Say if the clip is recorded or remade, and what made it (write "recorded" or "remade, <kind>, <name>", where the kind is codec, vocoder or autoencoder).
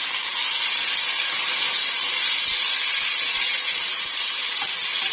recorded